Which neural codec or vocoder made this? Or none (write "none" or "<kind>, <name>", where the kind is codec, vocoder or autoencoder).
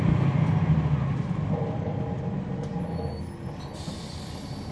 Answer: none